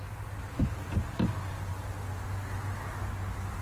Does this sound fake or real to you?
real